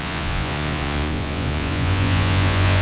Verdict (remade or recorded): remade